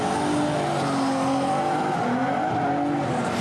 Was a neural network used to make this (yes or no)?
no